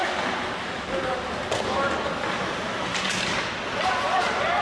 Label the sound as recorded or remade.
recorded